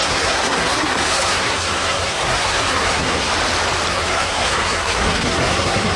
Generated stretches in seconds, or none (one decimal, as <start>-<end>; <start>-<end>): 0.0-3.3; 3.9-6.0